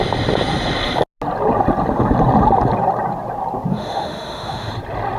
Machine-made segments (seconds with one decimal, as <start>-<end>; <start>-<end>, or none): 3.7-4.7

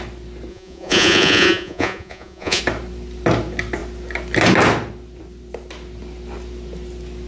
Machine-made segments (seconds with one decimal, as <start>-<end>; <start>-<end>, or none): 0.5-2.6

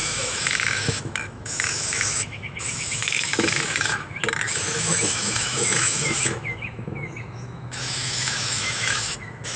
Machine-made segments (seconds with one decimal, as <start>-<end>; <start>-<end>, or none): 0.0-9.6

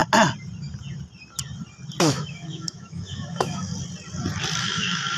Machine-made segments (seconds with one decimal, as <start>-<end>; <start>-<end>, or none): 2.0-3.7; 4.6-5.2

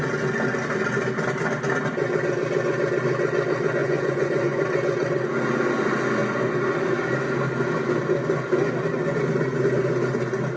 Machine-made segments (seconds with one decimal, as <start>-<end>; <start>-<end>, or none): 3.8-4.6

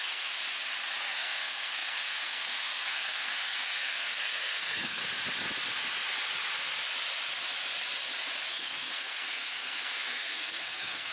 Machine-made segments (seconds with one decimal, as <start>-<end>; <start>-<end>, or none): 0.0-0.4; 1.0-5.0; 8.5-11.1

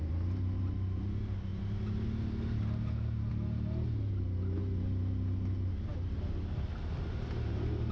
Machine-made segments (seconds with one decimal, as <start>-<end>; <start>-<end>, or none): none

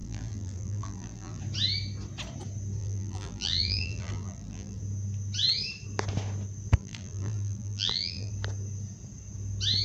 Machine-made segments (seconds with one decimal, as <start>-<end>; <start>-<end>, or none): 0.0-1.4; 2.8-4.8; 6.8-8.3